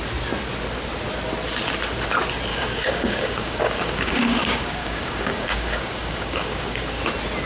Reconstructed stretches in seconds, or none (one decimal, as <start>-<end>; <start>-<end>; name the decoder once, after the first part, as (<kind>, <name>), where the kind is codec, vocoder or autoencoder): 2.5-7.0 (codec, DAC)